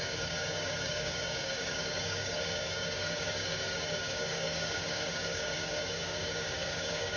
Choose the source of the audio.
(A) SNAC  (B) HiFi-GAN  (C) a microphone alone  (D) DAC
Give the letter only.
D